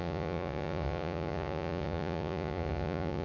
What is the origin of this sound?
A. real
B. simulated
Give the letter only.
B